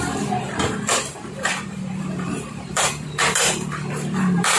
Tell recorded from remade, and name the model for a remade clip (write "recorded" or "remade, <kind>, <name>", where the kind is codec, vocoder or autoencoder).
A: remade, vocoder, BigVGAN v2